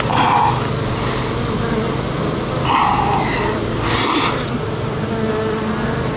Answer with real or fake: real